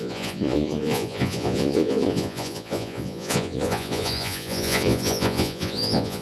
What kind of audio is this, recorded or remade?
remade